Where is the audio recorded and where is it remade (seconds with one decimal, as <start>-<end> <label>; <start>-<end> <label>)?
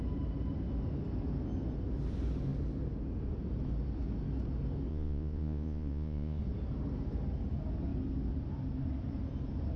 0.0-4.9 recorded; 4.9-6.4 remade; 6.4-9.8 recorded